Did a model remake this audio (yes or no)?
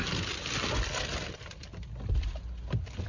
no